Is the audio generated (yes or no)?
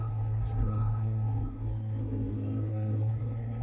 yes